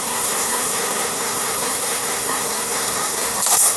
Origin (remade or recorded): remade